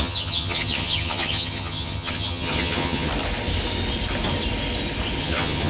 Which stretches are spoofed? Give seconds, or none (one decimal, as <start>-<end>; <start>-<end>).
0.0-3.1; 5.2-5.7